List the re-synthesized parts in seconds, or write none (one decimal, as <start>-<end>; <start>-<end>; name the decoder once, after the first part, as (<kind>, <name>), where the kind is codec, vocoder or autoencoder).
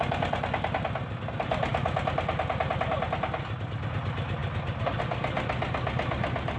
none